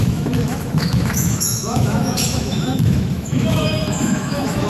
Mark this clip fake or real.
fake